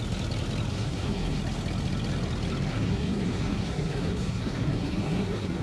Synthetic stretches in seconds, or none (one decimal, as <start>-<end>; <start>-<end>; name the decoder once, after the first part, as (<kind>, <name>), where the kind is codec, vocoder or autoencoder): 0.7-1.4 (codec, SNAC); 2.7-5.6

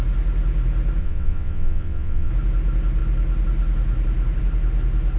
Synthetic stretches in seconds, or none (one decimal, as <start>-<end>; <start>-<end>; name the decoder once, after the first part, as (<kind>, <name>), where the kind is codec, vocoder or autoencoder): 1.0-2.3 (vocoder, WaveNeXt)

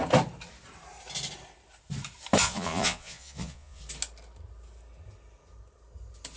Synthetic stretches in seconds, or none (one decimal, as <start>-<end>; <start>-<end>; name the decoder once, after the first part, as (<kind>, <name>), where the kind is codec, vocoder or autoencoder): 2.4-3.8 (vocoder, Vocos)

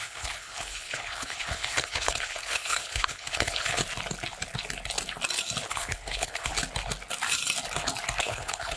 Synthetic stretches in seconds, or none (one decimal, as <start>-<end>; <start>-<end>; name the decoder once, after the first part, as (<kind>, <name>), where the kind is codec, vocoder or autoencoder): 0.0-3.8 (codec, HILCodec); 5.7-6.5; 8.2-8.8

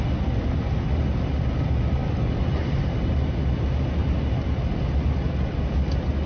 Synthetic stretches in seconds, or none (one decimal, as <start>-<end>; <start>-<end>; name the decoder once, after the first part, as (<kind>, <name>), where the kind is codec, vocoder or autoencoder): none

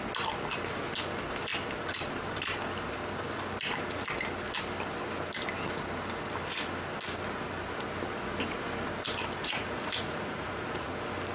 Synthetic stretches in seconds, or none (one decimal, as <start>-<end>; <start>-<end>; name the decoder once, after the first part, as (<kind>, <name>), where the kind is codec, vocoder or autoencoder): 9.4-10.9 (vocoder, Vocos)